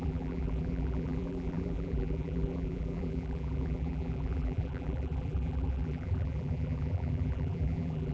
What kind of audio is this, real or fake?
fake